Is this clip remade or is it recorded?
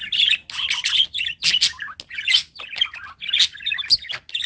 recorded